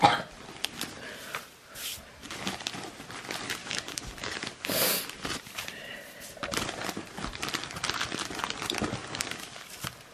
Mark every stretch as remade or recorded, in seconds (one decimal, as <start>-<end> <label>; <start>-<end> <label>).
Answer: 0.0-3.6 recorded; 3.6-5.0 remade; 5.0-9.0 recorded; 9.0-9.7 remade; 9.7-10.1 recorded